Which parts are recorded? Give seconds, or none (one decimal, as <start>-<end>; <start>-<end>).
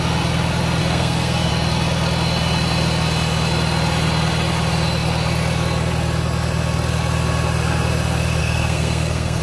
0.0-0.8; 1.5-8.4